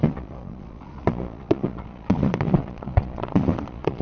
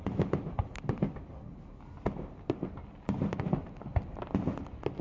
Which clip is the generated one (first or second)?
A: first